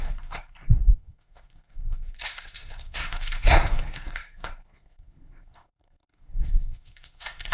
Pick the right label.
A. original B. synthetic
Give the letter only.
B